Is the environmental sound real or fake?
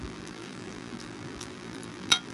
fake